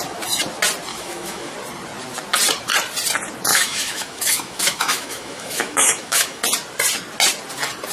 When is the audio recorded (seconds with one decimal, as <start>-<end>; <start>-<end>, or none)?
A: 0.0-0.9; 1.5-3.5; 6.4-7.9